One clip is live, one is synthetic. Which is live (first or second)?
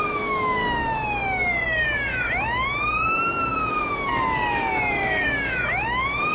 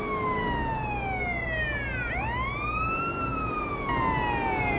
second